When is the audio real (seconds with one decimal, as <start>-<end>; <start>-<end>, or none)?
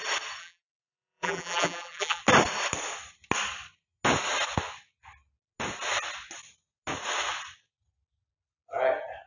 0.0-0.4; 2.2-9.3